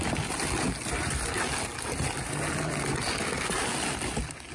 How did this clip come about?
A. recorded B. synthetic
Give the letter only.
A